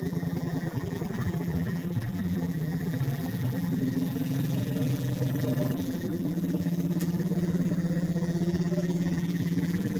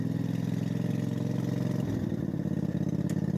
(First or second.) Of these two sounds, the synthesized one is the first